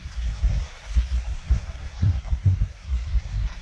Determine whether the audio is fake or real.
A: fake